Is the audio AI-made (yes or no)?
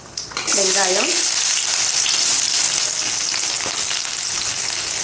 no